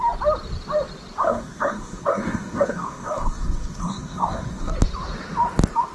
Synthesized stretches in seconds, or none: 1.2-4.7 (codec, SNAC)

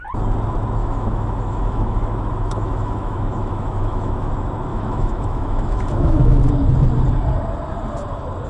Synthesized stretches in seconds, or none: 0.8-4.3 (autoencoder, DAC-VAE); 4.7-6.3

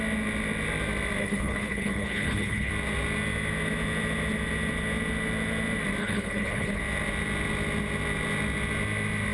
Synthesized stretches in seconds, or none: 1.2-2.7 (codec, HILCodec); 6.0-6.8